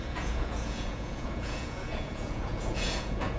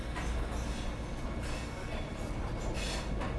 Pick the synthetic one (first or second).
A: first